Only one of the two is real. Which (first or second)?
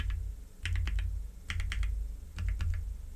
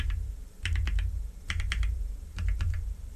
first